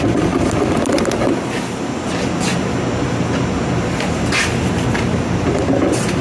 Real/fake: real